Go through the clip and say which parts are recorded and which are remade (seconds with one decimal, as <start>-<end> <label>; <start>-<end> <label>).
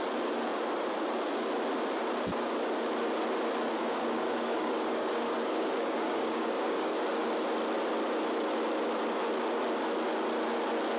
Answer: 0.0-3.8 recorded; 3.8-6.9 remade; 6.9-11.0 recorded